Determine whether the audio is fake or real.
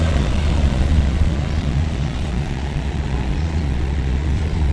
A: fake